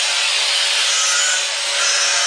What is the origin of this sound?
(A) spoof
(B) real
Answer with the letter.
B